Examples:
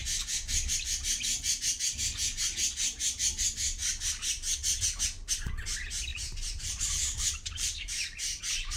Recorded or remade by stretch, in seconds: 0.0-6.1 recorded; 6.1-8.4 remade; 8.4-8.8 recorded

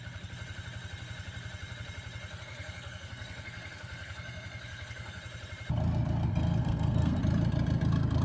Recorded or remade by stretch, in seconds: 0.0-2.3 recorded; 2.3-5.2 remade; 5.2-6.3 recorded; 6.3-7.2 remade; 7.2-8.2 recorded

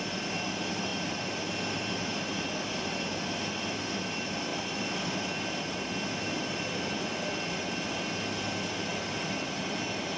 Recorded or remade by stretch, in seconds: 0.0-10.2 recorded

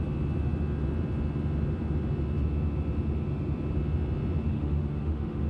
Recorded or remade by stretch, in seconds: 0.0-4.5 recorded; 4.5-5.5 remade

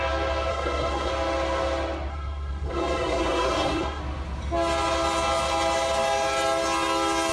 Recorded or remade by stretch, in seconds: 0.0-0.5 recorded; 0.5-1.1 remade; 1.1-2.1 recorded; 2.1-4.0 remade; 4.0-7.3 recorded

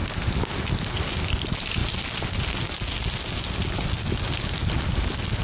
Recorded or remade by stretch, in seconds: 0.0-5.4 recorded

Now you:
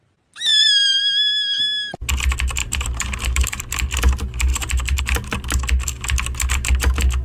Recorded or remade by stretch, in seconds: 0.0-0.5 recorded; 0.5-1.0 remade; 1.0-2.6 recorded; 2.6-3.6 remade; 3.6-4.5 recorded; 4.5-5.0 remade; 5.0-7.2 recorded